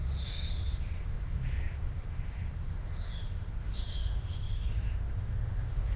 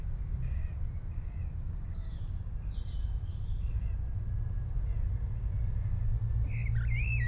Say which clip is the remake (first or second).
first